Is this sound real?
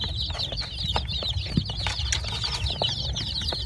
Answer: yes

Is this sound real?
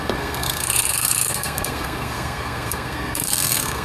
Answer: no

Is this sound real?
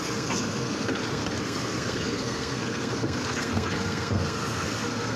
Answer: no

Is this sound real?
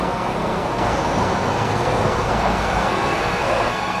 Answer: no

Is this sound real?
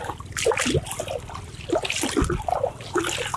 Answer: yes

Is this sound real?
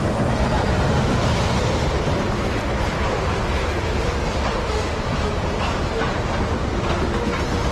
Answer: yes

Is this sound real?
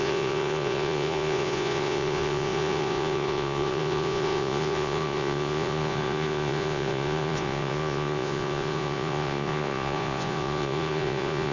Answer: no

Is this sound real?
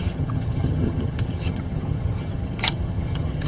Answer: no